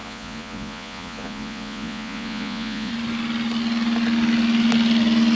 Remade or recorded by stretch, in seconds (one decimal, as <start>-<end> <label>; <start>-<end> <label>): 0.0-2.9 remade; 2.9-5.3 recorded

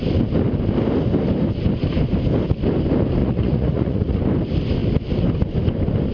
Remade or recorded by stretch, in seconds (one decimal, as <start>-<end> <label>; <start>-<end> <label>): 0.0-3.2 recorded; 3.2-4.2 remade; 4.2-6.1 recorded

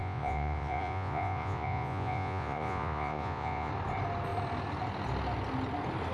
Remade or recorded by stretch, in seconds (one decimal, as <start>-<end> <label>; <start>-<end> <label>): 0.0-3.7 remade; 3.7-6.1 recorded

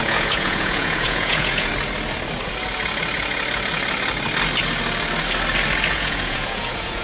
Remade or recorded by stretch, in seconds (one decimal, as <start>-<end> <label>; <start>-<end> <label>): 0.0-1.7 remade; 1.7-5.9 recorded; 5.9-7.0 remade